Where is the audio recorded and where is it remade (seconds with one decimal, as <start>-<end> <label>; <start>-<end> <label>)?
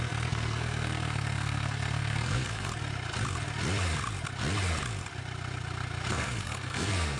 0.0-2.7 remade; 2.7-6.1 recorded; 6.1-7.2 remade